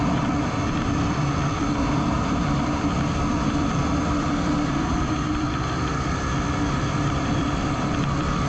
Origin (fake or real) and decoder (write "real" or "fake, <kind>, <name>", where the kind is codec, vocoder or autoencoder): fake, vocoder, BigVGAN v2